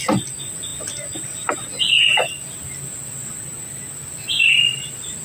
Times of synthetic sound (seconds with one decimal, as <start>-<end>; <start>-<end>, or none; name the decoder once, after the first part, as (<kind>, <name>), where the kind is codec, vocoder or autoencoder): none